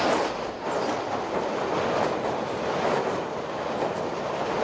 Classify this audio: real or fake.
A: real